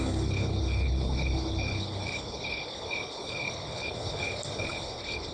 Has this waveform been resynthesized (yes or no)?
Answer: yes